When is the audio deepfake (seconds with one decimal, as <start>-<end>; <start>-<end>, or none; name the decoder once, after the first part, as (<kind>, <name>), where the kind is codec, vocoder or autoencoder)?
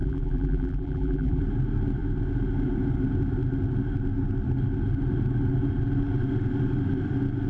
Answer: 0.0-1.4 (vocoder, BigVGAN v2)